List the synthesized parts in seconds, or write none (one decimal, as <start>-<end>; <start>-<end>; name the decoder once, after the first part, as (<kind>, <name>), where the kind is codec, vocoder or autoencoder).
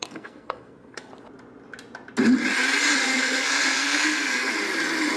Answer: 0.0-1.1 (codec, SNAC); 3.1-4.5